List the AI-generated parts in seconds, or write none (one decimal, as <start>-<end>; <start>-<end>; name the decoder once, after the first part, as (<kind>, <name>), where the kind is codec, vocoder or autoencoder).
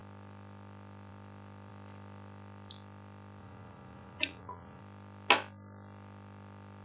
3.4-4.8 (vocoder, Vocos)